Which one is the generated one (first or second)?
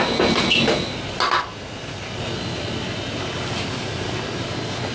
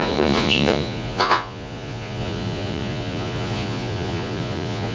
second